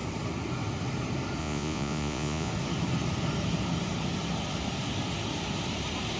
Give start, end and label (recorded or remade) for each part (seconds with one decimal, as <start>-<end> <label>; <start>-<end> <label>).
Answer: 0.0-1.4 recorded; 1.4-2.5 remade; 2.5-6.2 recorded